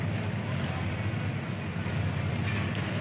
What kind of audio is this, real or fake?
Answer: real